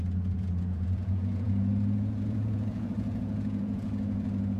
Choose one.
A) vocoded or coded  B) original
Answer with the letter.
A